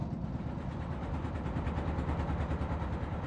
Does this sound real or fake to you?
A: real